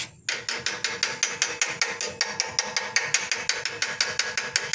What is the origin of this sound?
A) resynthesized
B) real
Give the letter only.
B